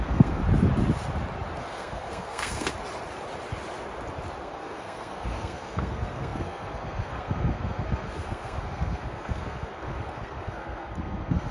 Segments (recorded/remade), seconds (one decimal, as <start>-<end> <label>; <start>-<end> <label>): 0.0-0.4 remade; 0.4-1.6 recorded; 1.6-2.7 remade; 2.7-4.4 recorded; 4.4-11.5 remade